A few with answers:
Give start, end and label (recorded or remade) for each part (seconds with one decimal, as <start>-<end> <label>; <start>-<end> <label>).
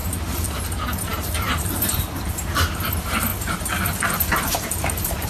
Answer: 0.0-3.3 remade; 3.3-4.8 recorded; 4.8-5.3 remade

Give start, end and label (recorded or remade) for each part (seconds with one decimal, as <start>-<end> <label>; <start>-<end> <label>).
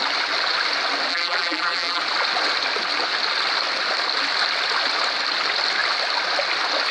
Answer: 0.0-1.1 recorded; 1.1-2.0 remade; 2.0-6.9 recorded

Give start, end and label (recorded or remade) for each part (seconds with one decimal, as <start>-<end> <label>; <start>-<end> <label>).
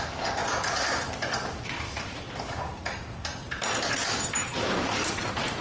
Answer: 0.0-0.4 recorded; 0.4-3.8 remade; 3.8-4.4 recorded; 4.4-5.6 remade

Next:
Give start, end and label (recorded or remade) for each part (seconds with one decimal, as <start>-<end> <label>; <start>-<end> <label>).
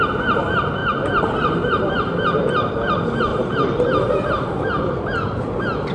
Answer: 0.0-0.8 recorded; 0.8-1.8 remade; 1.8-3.3 recorded; 3.3-5.5 remade; 5.5-5.9 recorded